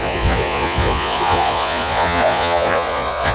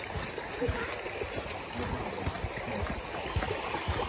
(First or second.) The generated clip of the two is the first